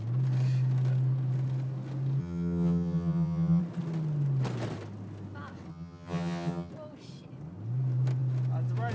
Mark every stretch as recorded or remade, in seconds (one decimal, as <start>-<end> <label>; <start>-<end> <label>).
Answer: 0.0-2.2 recorded; 2.2-3.6 remade; 3.6-5.7 recorded; 5.7-6.7 remade; 6.7-8.9 recorded